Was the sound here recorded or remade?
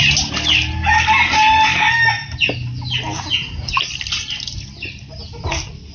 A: recorded